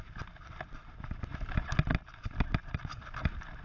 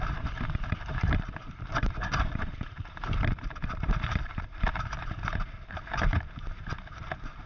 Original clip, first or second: first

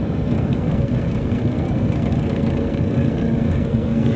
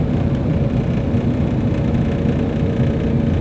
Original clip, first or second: second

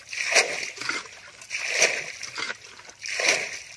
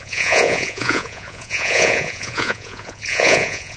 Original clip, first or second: first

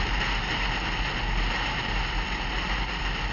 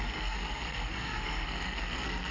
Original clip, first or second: first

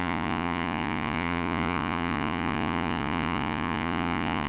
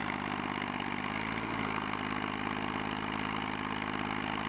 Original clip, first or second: second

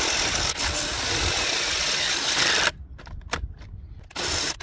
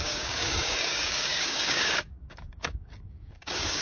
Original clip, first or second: first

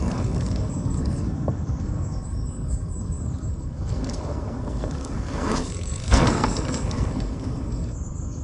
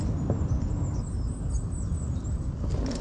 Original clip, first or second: second